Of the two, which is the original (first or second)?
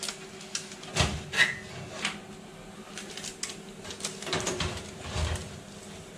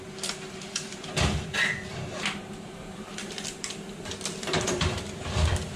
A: first